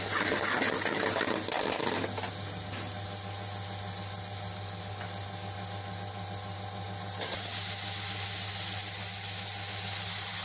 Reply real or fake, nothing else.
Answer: real